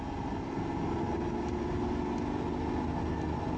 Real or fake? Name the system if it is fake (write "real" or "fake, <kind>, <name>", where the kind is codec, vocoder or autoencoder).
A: real